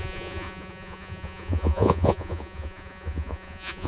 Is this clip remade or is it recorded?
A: remade